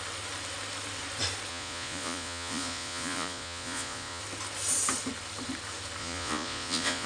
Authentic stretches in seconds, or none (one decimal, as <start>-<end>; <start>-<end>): 0.0-1.5; 4.2-6.0